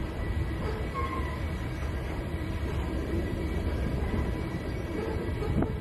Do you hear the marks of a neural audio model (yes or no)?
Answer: yes